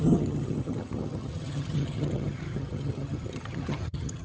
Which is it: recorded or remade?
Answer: remade